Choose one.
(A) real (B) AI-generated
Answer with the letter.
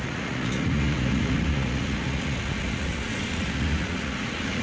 B